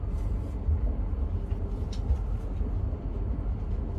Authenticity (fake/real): real